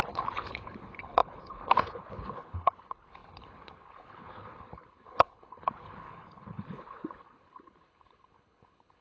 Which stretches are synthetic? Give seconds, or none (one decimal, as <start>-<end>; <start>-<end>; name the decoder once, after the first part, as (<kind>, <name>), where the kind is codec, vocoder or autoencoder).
0.0-9.0 (codec, HILCodec)